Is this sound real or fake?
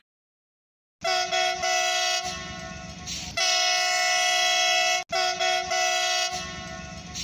real